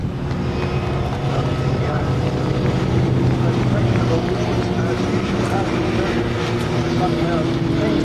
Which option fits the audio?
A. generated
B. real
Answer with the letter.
B